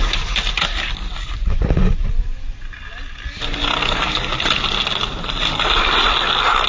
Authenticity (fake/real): real